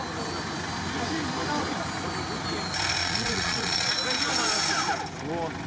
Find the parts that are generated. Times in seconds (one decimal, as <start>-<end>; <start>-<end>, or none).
3.0-3.9